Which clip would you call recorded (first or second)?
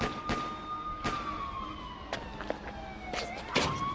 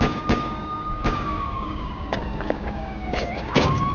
first